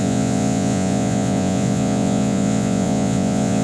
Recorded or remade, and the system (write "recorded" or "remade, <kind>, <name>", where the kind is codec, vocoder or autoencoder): remade, vocoder, Vocos